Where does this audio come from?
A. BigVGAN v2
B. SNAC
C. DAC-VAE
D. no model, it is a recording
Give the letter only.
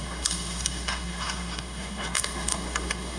B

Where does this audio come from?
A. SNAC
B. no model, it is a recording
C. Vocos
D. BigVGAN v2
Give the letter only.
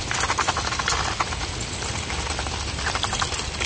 B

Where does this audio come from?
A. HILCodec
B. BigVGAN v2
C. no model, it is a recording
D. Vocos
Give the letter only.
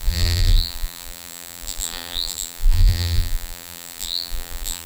B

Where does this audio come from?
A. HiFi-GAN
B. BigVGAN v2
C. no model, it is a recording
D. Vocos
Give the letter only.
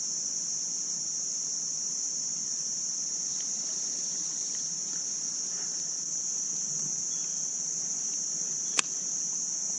B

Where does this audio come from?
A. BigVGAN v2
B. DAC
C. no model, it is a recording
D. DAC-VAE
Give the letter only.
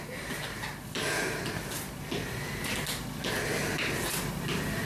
C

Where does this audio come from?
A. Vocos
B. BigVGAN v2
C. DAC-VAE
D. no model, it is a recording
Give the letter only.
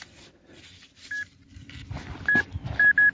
D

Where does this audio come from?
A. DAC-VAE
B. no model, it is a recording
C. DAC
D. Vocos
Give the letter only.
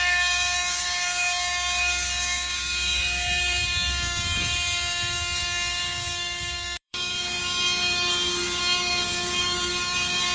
C